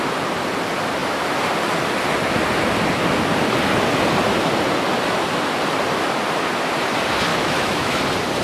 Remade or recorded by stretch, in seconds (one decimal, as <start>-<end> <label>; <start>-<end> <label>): 0.0-7.3 recorded; 7.3-8.0 remade; 8.0-8.4 recorded